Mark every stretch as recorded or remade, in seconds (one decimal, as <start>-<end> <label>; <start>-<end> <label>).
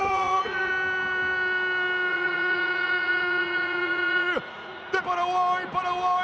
0.0-0.7 remade; 0.7-2.1 recorded; 2.1-5.0 remade; 5.0-6.2 recorded